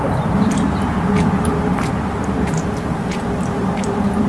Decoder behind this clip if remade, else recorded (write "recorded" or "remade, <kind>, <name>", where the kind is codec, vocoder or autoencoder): remade, vocoder, BigVGAN v2